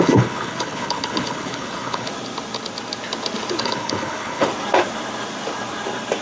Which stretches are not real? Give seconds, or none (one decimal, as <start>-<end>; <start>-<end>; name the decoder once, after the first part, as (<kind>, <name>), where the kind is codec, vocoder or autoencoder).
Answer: 0.0-2.1 (codec, HILCodec); 3.6-4.5